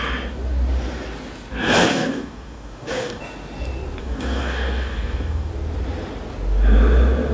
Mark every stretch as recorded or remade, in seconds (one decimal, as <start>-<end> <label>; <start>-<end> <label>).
0.0-1.9 recorded; 1.9-3.2 remade; 3.2-4.0 recorded; 4.0-5.5 remade; 5.5-7.3 recorded